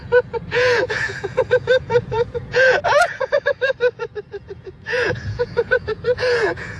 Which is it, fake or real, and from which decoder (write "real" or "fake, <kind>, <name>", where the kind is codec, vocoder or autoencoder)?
fake, vocoder, Vocos